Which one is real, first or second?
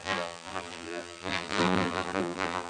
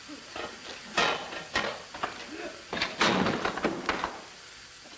second